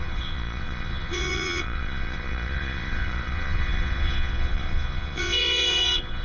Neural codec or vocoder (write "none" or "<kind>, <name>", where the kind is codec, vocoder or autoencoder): vocoder, Vocos